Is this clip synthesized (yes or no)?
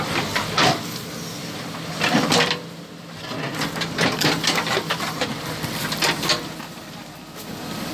no